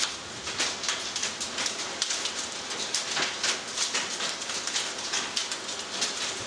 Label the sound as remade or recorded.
recorded